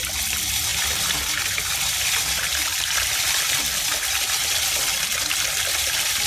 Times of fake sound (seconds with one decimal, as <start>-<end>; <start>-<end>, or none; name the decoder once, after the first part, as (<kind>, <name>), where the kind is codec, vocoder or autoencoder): none